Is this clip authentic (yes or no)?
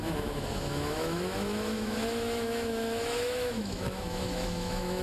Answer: no